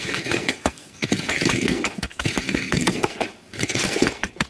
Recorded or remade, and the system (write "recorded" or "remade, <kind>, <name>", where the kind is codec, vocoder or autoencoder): remade, codec, SNAC